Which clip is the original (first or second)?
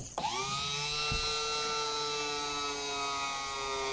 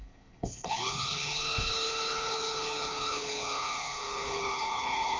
first